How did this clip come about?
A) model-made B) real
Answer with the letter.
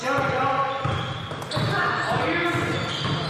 B